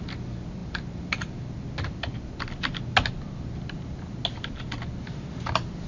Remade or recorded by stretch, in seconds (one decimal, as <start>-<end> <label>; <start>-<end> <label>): 0.0-5.9 recorded